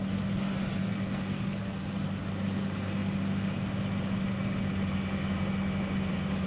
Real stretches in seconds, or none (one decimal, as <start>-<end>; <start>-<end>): 0.0-0.8; 1.9-6.5